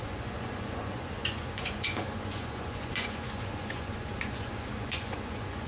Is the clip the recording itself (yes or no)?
no